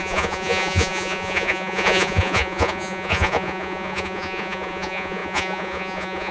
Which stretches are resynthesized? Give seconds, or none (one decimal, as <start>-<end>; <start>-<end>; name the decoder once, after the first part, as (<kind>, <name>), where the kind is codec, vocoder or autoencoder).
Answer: 0.0-6.3 (vocoder, Vocos)